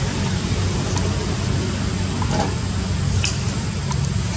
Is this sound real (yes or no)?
yes